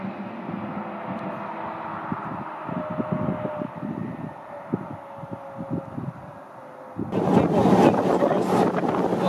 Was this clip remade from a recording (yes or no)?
no